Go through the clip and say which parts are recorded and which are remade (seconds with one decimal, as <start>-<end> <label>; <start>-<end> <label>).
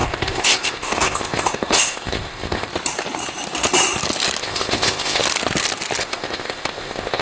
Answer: 0.0-2.7 remade; 2.7-4.4 recorded; 4.4-5.2 remade; 5.2-6.0 recorded; 6.0-7.2 remade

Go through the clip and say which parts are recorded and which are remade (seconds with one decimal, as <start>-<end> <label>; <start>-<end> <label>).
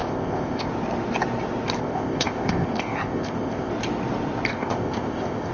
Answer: 0.0-0.7 remade; 0.7-1.8 recorded; 1.8-3.7 remade; 3.7-4.5 recorded; 4.5-5.5 remade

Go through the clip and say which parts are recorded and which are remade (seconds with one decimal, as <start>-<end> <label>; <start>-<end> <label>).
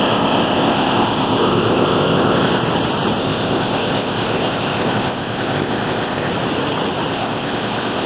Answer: 0.0-2.6 remade; 2.6-3.2 recorded; 3.2-6.3 remade; 6.3-7.1 recorded; 7.1-8.1 remade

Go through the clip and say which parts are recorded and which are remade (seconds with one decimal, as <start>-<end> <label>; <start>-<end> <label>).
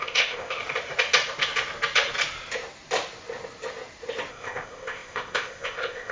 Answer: 0.0-0.6 remade; 0.6-4.3 recorded; 4.3-6.1 remade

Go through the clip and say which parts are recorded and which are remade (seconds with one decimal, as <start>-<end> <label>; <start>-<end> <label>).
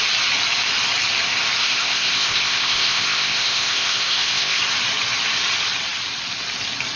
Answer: 0.0-1.6 recorded; 1.6-4.6 remade; 4.6-7.0 recorded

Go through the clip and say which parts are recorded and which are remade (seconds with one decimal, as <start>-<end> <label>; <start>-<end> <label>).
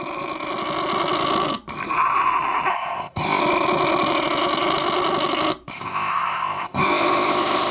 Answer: 0.0-2.7 recorded; 2.7-3.4 remade; 3.4-5.7 recorded; 5.7-7.7 remade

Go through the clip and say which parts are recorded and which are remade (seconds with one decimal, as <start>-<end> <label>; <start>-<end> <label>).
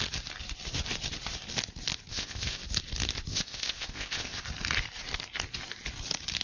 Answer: 0.0-2.1 recorded; 2.1-2.6 remade; 2.6-3.3 recorded; 3.3-4.4 remade; 4.4-6.4 recorded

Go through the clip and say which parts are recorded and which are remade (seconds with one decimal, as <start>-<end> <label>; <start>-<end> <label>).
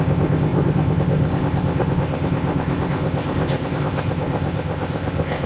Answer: 0.0-5.5 remade